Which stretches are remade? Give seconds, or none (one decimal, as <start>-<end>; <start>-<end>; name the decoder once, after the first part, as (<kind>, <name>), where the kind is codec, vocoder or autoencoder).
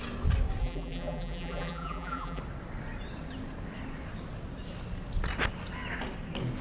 0.6-2.4 (vocoder, BigVGAN v2)